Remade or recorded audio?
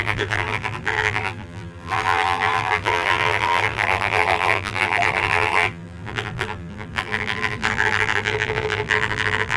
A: remade